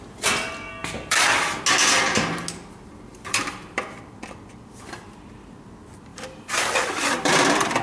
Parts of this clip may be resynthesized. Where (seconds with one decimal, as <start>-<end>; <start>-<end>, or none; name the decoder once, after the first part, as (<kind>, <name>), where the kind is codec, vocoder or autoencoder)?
0.8-1.3 (vocoder, BigVGAN v2); 3.1-4.7; 6.1-7.8